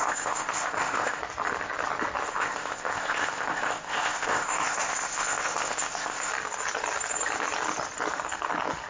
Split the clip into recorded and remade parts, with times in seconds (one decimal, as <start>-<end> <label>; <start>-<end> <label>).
0.0-1.2 remade; 1.2-2.3 recorded; 2.3-6.3 remade; 6.3-8.9 recorded

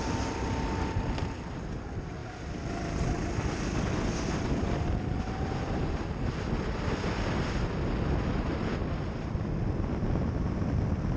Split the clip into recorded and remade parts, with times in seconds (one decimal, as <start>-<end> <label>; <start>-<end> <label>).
0.0-11.2 recorded

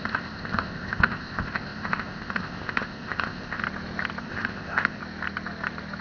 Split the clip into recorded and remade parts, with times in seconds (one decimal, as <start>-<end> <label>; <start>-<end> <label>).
0.0-3.6 remade; 3.6-4.2 recorded; 4.2-5.0 remade; 5.0-6.0 recorded

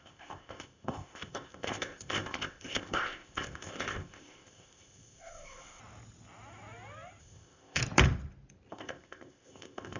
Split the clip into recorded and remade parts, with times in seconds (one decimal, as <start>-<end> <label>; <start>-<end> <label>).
0.0-5.8 remade; 5.8-7.2 recorded; 7.2-7.8 remade; 7.8-8.7 recorded; 8.7-10.0 remade

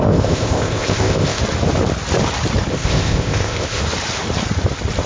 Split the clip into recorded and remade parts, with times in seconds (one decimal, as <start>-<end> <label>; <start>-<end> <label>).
0.0-1.4 remade; 1.4-2.7 recorded; 2.7-3.8 remade; 3.8-5.1 recorded

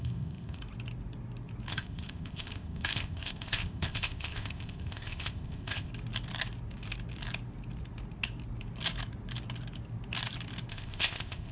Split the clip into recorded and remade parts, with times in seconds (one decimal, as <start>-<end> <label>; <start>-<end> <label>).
0.0-0.6 remade; 0.6-1.7 recorded; 1.7-5.9 remade; 5.9-10.7 recorded; 10.7-11.5 remade